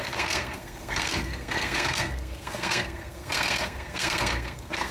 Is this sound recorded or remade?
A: remade